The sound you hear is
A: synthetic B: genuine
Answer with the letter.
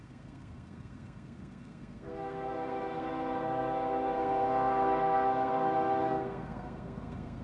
A